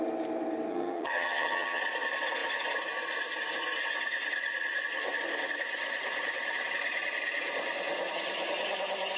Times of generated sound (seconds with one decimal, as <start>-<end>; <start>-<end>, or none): 0.7-1.8